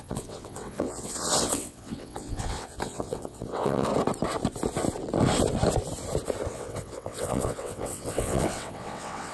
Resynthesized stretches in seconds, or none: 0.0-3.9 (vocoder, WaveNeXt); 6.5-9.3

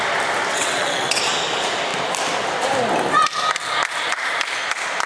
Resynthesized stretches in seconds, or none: 0.5-1.2 (vocoder, WaveNeXt)

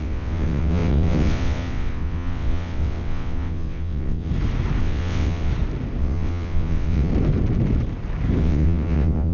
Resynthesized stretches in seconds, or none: 0.0-4.3 (vocoder, WaveNeXt); 4.8-5.5; 6.0-7.1; 8.4-9.3

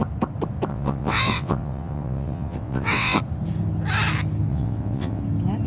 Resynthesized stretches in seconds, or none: 0.7-3.2 (vocoder, WaveNeXt); 4.5-5.2

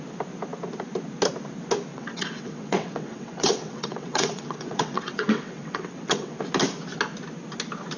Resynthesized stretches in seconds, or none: 1.9-6.4 (vocoder, WaveNeXt)

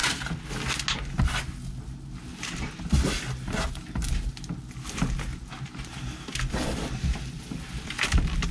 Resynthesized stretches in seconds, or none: none